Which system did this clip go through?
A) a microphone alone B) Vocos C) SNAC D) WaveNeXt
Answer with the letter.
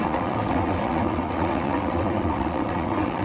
D